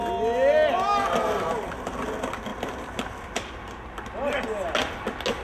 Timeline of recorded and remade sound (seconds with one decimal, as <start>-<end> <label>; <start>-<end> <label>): 0.0-5.4 recorded